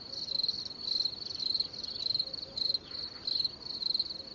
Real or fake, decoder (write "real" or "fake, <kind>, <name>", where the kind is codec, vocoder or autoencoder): real